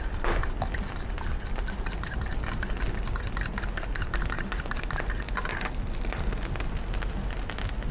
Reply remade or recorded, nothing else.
recorded